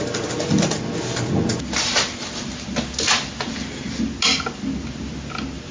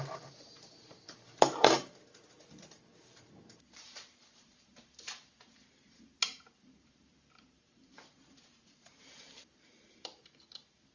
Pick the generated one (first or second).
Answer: second